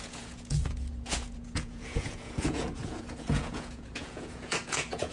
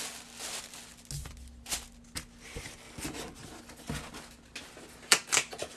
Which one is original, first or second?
second